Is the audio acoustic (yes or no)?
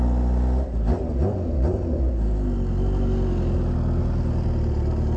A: yes